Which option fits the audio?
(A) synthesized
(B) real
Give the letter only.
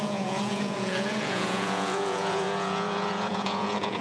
A